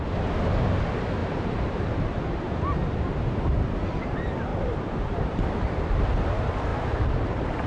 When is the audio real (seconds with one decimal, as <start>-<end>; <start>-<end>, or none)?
0.0-1.2; 2.6-4.5; 6.0-7.7